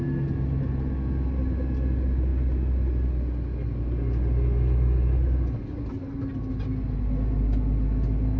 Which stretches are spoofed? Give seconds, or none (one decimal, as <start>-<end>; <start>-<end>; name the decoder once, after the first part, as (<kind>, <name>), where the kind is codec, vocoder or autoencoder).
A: none